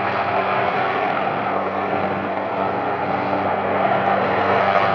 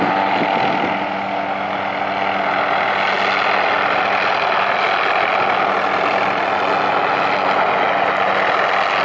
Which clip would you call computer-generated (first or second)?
first